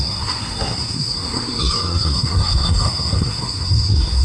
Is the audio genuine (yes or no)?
no